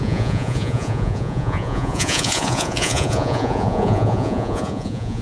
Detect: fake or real fake